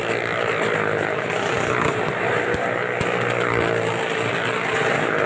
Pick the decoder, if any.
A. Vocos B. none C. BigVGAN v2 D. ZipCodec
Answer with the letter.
B